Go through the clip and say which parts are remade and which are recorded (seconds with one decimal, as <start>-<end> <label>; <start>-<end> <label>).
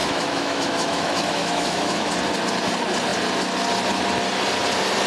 0.0-2.1 remade; 2.1-5.1 recorded